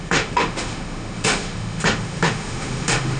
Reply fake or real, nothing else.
fake